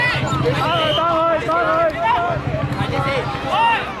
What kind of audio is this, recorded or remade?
recorded